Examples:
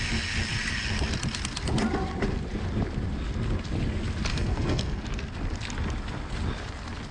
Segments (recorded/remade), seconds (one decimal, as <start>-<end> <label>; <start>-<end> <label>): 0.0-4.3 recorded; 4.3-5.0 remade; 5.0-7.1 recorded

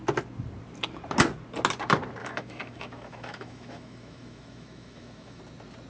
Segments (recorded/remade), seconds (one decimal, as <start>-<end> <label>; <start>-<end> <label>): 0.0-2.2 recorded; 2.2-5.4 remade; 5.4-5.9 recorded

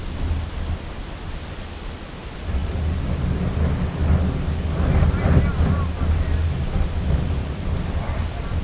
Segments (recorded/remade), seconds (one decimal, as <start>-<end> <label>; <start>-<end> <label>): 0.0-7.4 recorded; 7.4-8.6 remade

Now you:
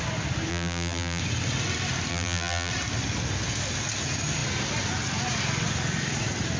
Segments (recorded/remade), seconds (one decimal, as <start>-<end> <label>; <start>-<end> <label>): 0.0-0.5 recorded; 0.5-1.2 remade; 1.2-2.1 recorded; 2.1-2.7 remade; 2.7-6.6 recorded

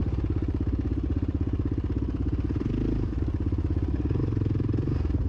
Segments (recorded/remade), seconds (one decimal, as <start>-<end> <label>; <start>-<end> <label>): 0.0-5.3 recorded

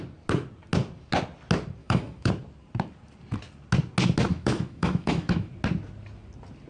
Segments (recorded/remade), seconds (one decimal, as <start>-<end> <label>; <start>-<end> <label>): 0.0-1.8 recorded; 1.8-2.3 remade; 2.3-4.3 recorded; 4.3-5.5 remade; 5.5-6.7 recorded